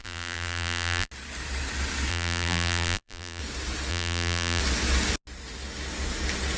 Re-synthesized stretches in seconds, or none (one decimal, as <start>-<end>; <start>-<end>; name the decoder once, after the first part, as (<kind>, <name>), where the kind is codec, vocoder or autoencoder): 0.0-1.1 (vocoder, BigVGAN v2); 2.1-3.4; 3.9-4.6